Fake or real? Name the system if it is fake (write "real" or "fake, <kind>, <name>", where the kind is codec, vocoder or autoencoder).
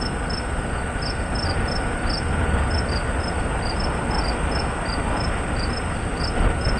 real